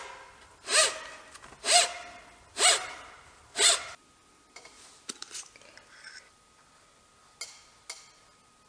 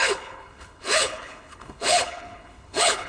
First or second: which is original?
first